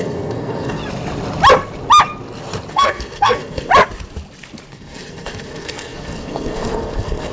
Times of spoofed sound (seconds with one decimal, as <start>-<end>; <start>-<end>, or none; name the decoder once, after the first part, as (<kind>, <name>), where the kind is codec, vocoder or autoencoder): 0.0-0.8 (codec, SNAC); 2.7-3.7; 4.7-7.3